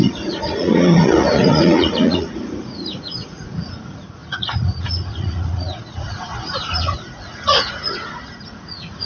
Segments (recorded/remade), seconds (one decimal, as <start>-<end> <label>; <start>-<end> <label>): 0.0-9.1 remade